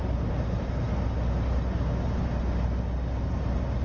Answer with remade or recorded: recorded